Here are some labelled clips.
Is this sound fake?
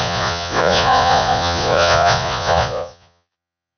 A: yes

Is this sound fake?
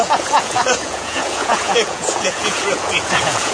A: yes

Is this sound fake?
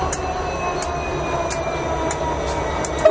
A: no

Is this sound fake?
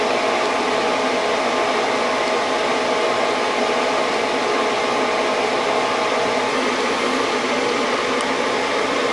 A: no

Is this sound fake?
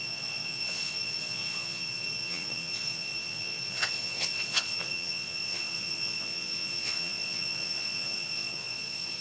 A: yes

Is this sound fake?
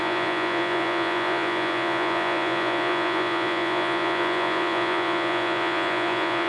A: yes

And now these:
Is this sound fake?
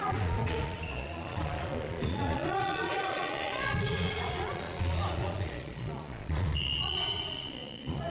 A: yes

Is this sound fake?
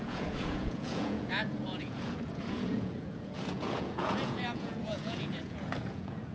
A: yes